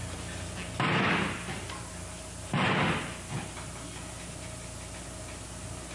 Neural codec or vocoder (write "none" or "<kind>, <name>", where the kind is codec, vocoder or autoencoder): none